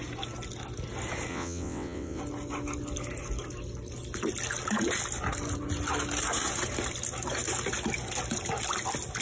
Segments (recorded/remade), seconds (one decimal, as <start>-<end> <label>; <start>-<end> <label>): 0.0-1.3 recorded; 1.3-2.2 remade; 2.2-9.2 recorded